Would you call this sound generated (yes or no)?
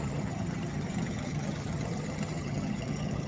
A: yes